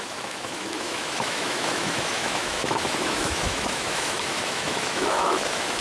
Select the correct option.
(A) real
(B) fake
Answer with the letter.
B